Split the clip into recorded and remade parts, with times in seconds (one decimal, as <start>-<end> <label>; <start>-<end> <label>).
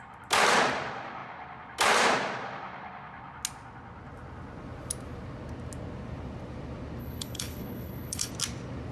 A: 0.0-7.0 recorded; 7.0-8.3 remade; 8.3-8.9 recorded